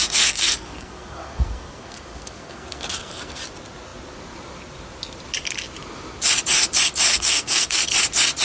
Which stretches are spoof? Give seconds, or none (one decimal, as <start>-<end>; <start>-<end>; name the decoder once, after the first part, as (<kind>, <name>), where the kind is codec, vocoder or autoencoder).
0.0-3.4 (codec, SNAC); 7.1-7.8